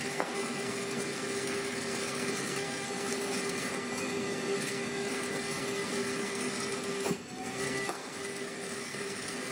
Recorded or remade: remade